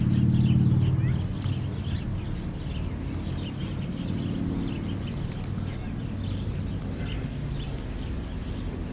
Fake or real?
real